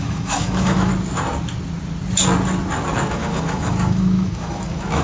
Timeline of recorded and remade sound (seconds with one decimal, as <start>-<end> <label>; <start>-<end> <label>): 0.0-0.9 remade; 0.9-3.1 recorded; 3.1-5.0 remade